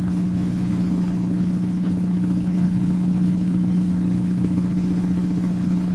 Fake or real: fake